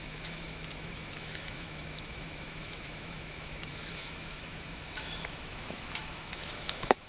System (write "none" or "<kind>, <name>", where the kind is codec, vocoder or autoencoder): autoencoder, DAC-VAE